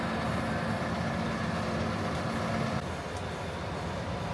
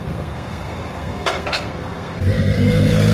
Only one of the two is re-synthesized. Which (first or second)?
second